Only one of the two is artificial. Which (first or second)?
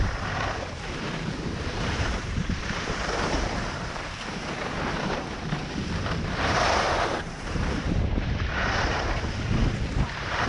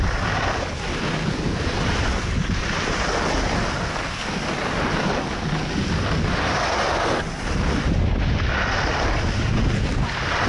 first